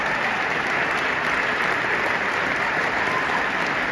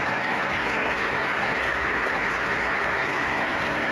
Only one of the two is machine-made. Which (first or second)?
second